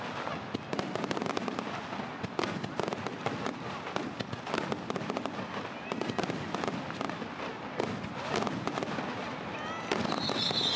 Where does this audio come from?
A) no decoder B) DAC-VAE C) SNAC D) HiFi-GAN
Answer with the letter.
A